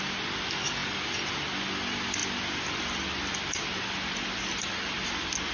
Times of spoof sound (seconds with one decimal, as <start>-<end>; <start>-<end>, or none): none